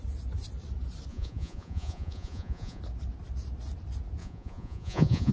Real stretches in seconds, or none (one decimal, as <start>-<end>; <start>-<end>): 0.0-1.1; 2.8-4.2